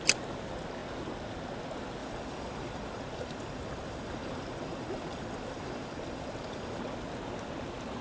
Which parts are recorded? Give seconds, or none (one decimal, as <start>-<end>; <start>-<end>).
0.0-2.0; 6.8-8.0